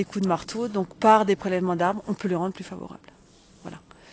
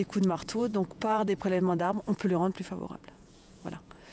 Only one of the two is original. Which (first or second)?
first